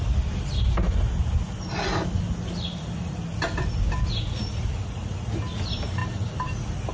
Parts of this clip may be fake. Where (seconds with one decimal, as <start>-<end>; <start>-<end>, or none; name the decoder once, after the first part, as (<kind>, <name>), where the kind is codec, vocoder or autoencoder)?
none